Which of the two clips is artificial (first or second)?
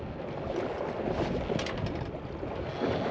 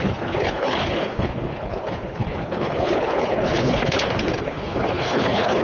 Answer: second